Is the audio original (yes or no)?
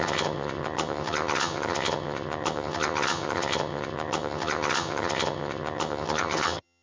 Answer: no